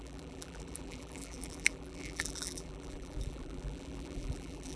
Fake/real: fake